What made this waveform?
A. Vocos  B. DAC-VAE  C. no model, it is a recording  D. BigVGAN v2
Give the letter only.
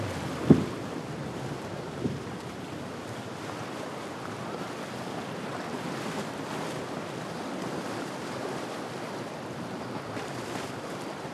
D